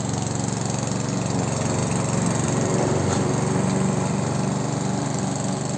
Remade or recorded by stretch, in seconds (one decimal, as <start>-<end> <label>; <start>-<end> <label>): 0.0-1.8 recorded; 1.8-5.2 remade; 5.2-5.8 recorded